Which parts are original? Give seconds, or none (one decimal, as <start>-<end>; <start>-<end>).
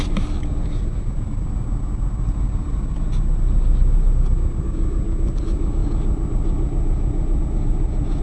0.0-8.2